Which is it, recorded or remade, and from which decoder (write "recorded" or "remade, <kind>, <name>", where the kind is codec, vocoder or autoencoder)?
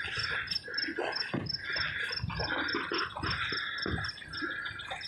recorded